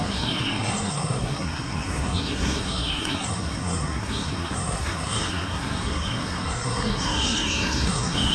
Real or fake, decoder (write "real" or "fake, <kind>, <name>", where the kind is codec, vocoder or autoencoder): fake, codec, SNAC